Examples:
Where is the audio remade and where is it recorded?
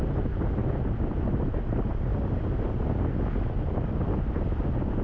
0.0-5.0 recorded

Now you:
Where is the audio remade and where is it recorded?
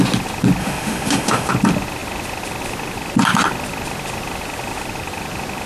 0.0-0.6 recorded; 0.6-1.5 remade; 1.5-5.7 recorded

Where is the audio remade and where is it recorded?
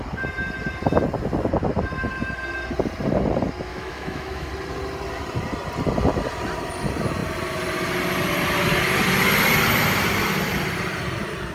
0.0-3.7 recorded; 3.7-4.5 remade; 4.5-11.5 recorded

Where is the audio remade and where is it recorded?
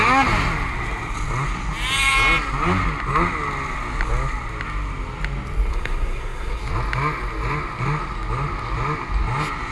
0.0-5.7 recorded; 5.7-6.6 remade; 6.6-9.7 recorded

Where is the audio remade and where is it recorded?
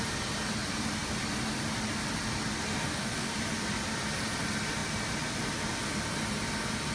0.0-2.7 recorded; 2.7-3.3 remade; 3.3-6.9 recorded